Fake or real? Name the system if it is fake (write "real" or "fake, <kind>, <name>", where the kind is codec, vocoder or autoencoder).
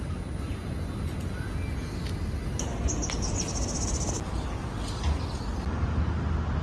real